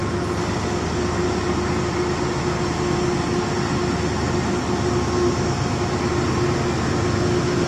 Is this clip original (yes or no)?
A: yes